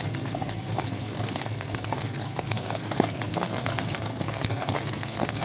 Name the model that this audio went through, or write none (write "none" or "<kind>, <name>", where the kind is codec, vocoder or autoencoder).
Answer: codec, SNAC